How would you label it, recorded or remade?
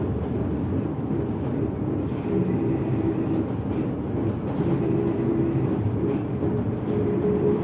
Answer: remade